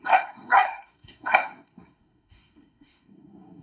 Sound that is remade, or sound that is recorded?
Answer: remade